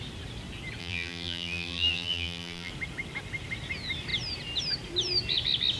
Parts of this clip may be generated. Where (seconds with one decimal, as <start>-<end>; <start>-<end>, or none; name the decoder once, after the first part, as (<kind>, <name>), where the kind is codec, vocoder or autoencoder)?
0.8-2.7 (vocoder, BigVGAN v2)